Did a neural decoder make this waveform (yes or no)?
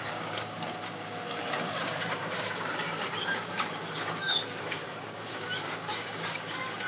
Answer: yes